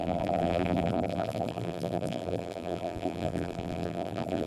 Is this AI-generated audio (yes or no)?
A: yes